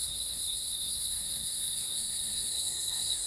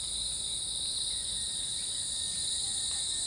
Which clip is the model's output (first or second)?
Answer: first